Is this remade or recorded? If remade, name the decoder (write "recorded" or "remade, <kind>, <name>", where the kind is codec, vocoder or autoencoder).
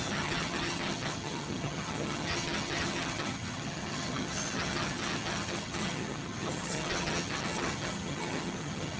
remade, vocoder, HiFi-GAN